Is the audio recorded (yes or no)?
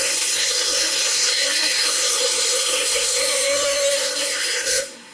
no